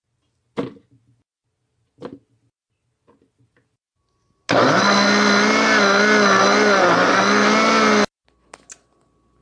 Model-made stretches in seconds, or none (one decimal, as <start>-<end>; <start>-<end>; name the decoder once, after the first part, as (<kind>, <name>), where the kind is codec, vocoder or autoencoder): none

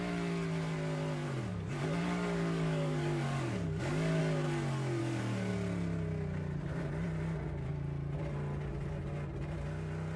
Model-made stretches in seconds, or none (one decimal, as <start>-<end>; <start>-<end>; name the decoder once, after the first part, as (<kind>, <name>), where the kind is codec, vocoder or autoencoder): 1.5-4.2 (codec, DAC); 5.0-5.5

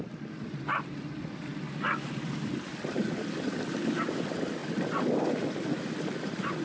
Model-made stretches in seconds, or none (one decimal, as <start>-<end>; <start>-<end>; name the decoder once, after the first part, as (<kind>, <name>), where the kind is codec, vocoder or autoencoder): none

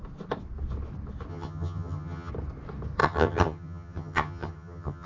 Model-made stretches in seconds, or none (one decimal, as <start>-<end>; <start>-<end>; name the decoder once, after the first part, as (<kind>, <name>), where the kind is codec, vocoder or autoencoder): 1.3-2.3 (vocoder, HiFi-GAN); 3.0-5.1

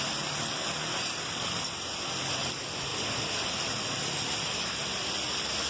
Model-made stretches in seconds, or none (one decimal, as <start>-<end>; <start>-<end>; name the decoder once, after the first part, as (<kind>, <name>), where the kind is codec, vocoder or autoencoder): none

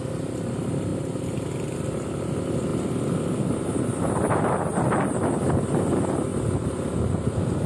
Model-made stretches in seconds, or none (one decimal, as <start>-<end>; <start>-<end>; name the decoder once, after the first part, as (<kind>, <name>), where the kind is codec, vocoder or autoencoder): none

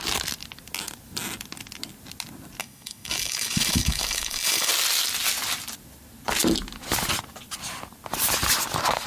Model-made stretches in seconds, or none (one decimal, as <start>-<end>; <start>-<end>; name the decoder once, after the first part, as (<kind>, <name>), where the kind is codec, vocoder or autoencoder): 2.6-4.7 (autoencoder, DAC-VAE)

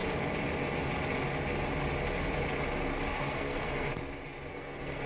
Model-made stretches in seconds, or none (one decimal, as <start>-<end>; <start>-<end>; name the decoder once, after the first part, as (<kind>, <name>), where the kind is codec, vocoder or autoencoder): 3.1-3.9 (codec, SNAC); 4.5-5.1